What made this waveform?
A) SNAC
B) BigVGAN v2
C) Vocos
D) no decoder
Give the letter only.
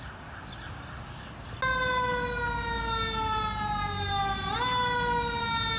D